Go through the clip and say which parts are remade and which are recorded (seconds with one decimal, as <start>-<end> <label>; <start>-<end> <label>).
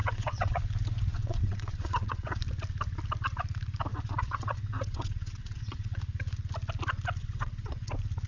0.0-0.6 remade; 0.6-1.1 recorded; 1.1-2.4 remade; 2.4-3.9 recorded; 3.9-6.0 remade; 6.0-7.2 recorded; 7.2-7.9 remade; 7.9-8.3 recorded